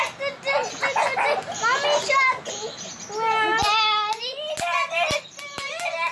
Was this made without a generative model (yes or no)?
yes